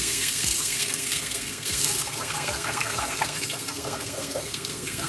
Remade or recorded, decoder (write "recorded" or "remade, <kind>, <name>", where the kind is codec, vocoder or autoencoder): remade, codec, SNAC